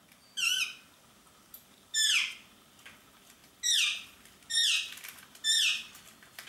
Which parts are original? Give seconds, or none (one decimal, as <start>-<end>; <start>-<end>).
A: 0.0-6.5

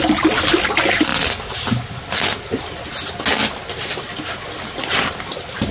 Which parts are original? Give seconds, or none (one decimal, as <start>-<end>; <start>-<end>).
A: 0.0-5.7

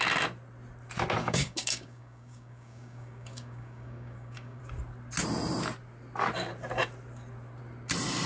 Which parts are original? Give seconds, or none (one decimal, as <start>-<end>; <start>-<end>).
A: 0.0-1.2; 4.6-8.3

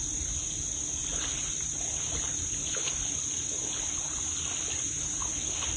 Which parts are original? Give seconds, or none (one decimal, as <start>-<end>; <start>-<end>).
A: 0.0-5.8

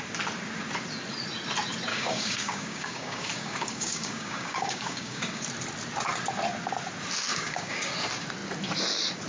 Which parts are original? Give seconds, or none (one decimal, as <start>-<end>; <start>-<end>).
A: 0.0-1.9; 5.4-7.3; 7.9-9.3

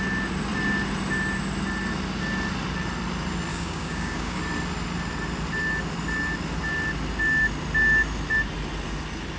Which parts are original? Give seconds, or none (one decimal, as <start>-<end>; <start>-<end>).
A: 0.0-3.5; 4.4-9.4